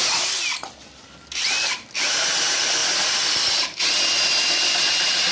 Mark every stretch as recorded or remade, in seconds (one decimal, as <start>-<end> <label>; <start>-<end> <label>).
0.0-5.3 recorded